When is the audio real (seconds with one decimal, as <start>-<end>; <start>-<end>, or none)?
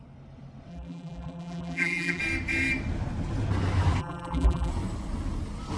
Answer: 0.0-0.7; 2.2-4.0; 4.7-5.8